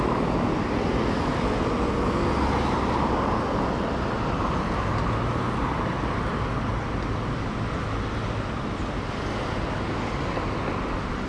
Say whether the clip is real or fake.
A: real